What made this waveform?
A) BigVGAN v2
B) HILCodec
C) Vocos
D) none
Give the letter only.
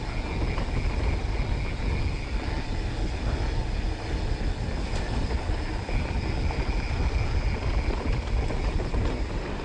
D